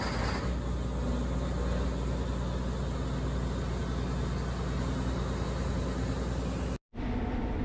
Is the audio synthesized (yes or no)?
no